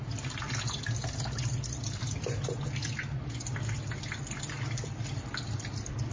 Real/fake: real